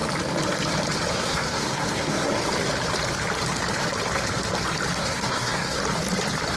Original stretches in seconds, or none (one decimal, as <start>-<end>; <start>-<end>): 0.0-1.1; 2.3-5.0; 5.8-6.6